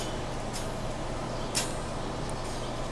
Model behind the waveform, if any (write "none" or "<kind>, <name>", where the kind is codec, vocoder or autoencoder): none